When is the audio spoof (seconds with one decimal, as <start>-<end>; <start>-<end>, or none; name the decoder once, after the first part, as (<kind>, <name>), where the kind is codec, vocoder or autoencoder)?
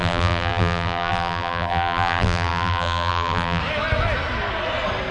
0.0-3.6 (vocoder, BigVGAN v2)